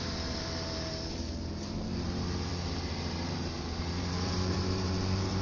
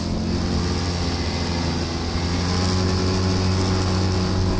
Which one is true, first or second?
second